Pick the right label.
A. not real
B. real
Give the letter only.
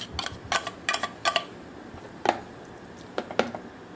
B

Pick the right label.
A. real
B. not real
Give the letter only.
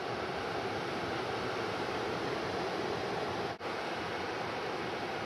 B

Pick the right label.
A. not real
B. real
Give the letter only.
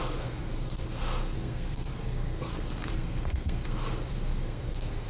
A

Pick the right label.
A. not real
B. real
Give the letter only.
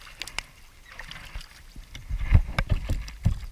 B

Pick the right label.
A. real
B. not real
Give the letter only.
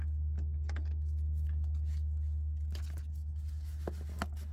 A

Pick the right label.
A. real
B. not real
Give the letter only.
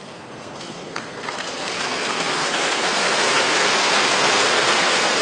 B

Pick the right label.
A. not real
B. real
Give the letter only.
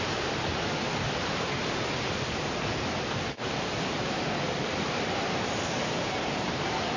A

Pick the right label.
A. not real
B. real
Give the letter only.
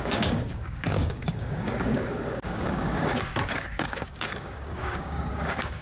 A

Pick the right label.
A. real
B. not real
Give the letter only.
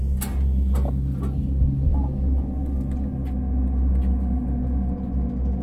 A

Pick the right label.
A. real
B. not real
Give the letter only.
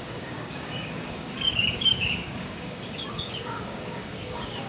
B